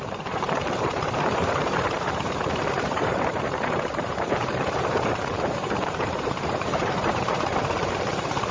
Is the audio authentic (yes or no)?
no